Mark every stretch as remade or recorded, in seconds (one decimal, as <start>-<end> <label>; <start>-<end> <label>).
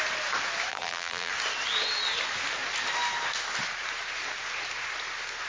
0.0-0.7 recorded; 0.7-1.3 remade; 1.3-5.5 recorded